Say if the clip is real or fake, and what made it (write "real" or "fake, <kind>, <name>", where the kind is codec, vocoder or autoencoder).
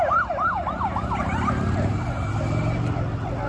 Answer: real